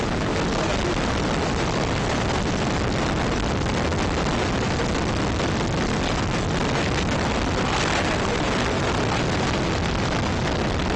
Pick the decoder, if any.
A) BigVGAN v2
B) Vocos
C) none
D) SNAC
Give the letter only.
C